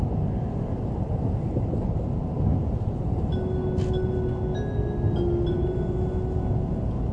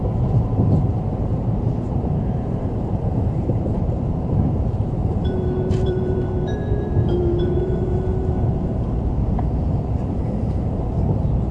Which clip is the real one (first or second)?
first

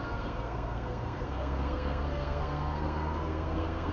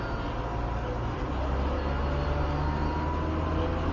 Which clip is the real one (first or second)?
second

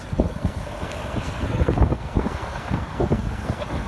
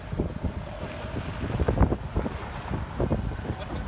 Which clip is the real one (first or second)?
second